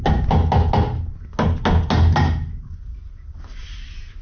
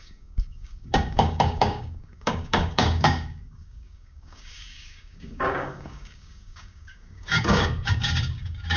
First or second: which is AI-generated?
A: second